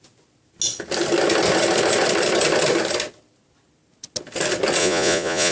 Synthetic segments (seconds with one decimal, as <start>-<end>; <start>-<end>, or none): 4.8-5.5